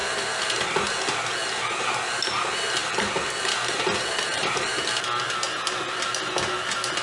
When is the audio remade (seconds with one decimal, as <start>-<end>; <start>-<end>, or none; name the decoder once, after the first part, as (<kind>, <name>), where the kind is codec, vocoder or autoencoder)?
0.0-0.6 (vocoder, BigVGAN v2); 2.8-4.5